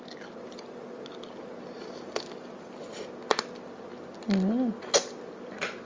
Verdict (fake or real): real